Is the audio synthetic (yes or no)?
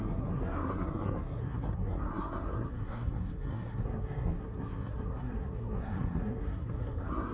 yes